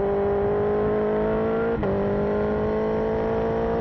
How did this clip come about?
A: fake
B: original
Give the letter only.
B